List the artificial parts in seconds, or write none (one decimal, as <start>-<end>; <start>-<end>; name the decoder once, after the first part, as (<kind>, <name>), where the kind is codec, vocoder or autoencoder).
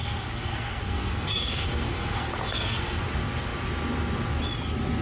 0.0-3.0 (codec, SNAC)